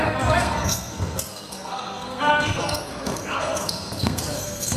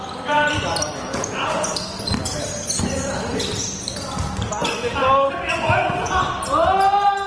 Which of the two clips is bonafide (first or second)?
second